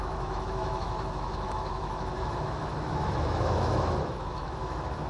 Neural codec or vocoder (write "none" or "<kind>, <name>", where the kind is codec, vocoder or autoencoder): autoencoder, DAC-VAE